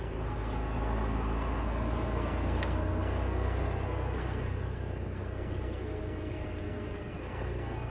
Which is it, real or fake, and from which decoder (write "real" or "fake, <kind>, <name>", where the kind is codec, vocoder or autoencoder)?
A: fake, codec, SNAC